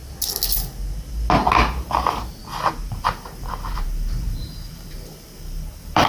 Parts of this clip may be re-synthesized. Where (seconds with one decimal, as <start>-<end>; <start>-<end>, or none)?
1.7-2.4; 2.9-6.1